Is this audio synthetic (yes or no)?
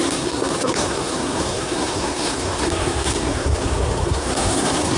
yes